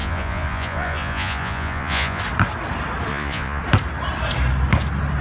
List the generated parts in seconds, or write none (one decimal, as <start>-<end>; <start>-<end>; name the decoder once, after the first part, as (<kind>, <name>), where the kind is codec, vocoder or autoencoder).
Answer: 0.0-2.2 (vocoder, Vocos); 3.1-3.6